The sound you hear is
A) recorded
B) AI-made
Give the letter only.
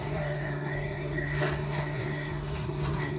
B